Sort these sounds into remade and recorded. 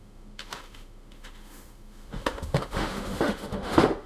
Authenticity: remade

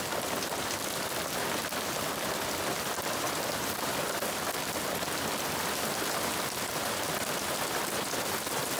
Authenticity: recorded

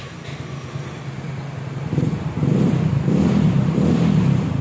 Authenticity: recorded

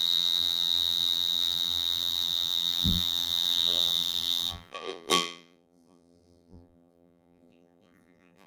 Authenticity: remade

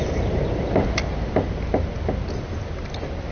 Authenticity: recorded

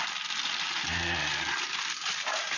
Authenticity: recorded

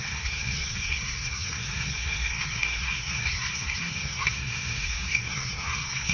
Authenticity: remade